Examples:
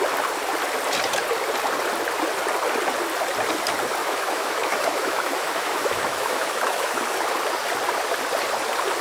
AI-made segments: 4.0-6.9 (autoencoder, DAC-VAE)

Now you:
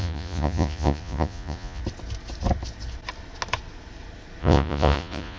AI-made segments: 0.0-1.8 (vocoder, Vocos); 4.4-5.4

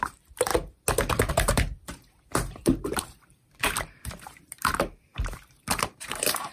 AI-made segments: 0.0-0.5 (vocoder, BigVGAN v2); 1.3-6.5

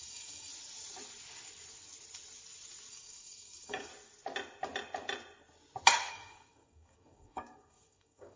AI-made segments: 0.0-0.5 (codec, DAC); 2.9-3.9; 6.1-8.4

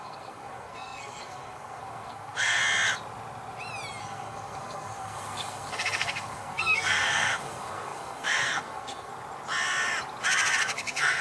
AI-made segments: 0.0-2.6 (codec, SNAC); 4.0-9.1; 10.6-11.2

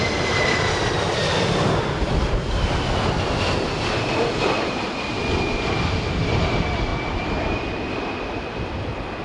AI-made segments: none

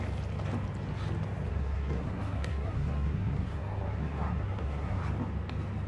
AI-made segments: 1.5-5.0 (codec, SNAC)